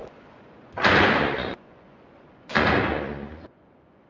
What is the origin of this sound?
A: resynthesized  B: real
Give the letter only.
A